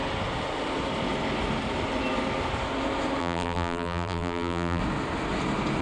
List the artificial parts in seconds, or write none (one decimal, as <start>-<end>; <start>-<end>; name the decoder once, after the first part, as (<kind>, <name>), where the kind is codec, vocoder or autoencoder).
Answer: 3.2-4.8 (vocoder, BigVGAN v2)